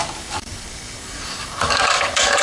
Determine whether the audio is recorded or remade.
remade